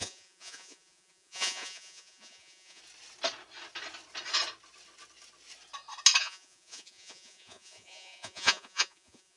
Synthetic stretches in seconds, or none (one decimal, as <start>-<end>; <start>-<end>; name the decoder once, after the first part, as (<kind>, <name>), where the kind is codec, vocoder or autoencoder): 0.0-2.8 (vocoder, Vocos); 6.2-9.4